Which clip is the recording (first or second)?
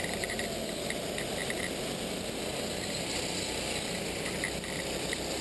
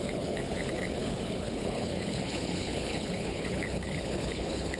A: first